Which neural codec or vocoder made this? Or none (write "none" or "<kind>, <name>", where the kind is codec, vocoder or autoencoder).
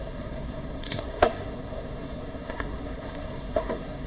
codec, SNAC